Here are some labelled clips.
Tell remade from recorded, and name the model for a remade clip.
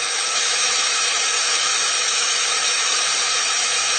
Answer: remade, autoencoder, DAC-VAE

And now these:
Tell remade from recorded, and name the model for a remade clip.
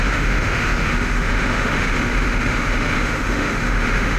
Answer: remade, autoencoder, DAC-VAE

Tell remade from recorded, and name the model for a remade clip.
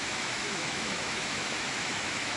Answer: remade, autoencoder, DAC-VAE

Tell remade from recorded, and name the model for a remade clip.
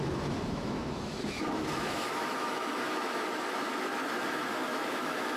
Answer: remade, autoencoder, DAC-VAE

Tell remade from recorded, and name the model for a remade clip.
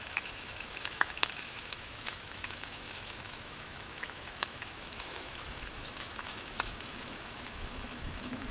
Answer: remade, autoencoder, DAC-VAE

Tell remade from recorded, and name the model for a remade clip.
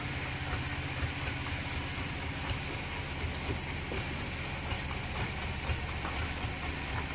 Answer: recorded